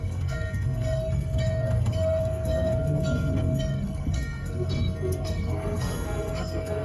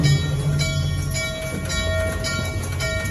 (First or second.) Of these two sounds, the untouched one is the second